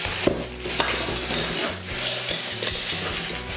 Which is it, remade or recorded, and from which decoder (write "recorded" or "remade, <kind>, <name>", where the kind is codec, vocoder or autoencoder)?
recorded